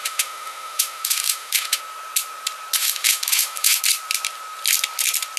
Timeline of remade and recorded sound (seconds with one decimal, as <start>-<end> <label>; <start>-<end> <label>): 0.0-1.8 remade; 1.8-2.8 recorded; 2.8-3.8 remade; 3.8-5.4 recorded